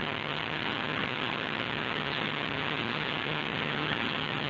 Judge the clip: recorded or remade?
remade